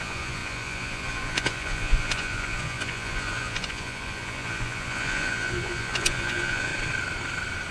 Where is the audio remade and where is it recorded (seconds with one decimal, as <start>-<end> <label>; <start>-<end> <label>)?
0.0-6.7 remade; 6.7-7.7 recorded

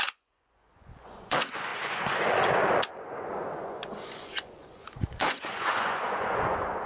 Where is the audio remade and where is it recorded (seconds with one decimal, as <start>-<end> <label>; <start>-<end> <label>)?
0.0-6.9 remade

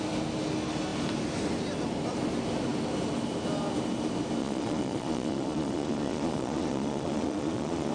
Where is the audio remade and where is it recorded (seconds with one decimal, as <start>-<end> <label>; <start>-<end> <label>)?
0.0-4.4 recorded; 4.4-7.9 remade